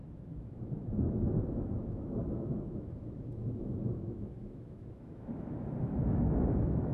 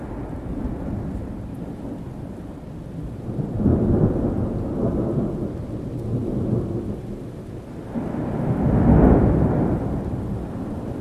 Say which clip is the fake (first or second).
first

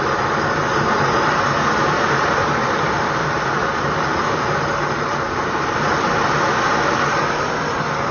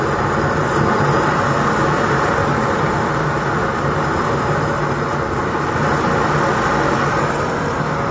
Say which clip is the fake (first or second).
first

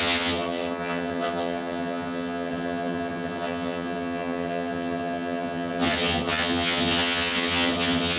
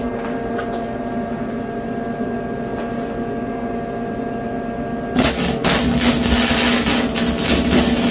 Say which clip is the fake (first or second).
first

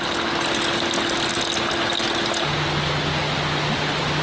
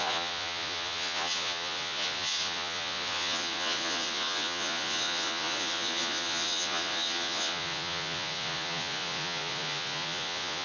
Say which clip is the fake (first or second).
second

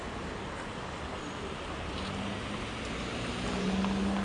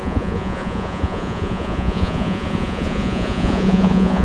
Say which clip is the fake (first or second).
second